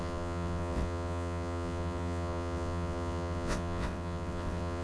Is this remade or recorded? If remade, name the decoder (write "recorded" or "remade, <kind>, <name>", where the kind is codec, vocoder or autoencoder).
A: remade, vocoder, WaveNeXt